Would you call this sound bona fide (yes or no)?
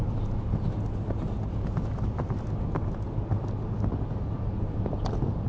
yes